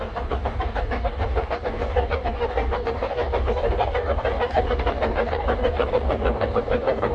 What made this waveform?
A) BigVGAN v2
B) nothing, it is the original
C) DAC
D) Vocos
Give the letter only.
C